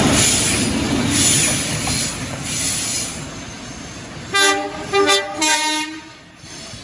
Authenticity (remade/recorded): recorded